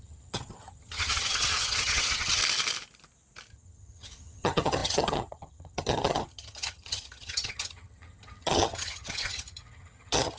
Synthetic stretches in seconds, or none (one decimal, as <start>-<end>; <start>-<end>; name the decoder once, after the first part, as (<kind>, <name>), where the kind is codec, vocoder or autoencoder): 0.0-2.4 (vocoder, HiFi-GAN); 3.5-10.4